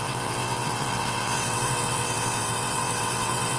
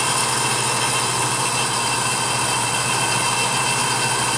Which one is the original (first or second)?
second